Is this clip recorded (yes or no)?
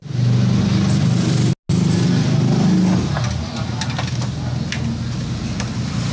yes